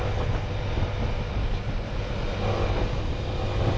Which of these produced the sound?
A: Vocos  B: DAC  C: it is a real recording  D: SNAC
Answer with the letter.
C